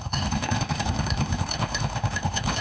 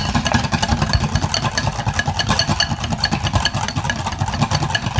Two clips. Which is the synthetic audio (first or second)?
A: first